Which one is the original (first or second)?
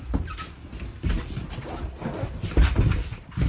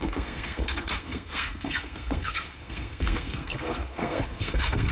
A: first